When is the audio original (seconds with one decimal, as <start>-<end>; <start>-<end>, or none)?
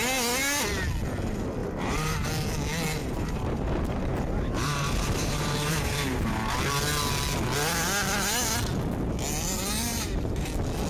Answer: 0.0-1.6; 2.3-3.0; 6.6-9.9; 10.5-10.9